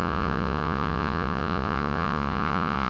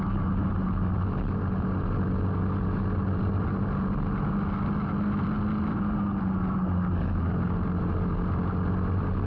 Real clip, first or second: second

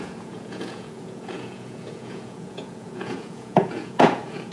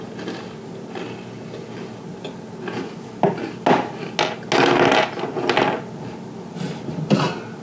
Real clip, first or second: second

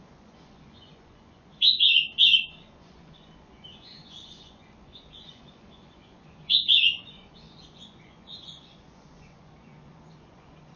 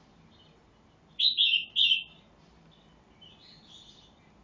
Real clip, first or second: second